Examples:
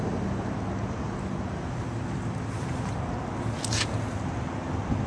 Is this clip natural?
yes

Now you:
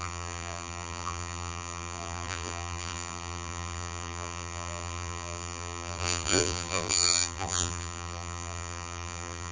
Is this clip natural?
no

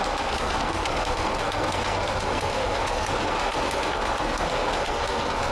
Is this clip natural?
no